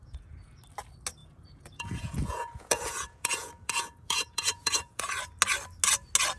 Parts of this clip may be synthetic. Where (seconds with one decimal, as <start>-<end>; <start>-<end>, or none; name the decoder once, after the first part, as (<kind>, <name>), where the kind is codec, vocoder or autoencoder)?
0.0-0.6 (vocoder, Vocos); 1.2-5.0